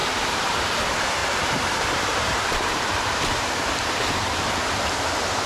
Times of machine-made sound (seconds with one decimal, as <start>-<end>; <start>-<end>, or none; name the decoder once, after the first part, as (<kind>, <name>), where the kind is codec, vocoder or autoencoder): 0.0-0.7 (vocoder, BigVGAN v2); 1.2-4.5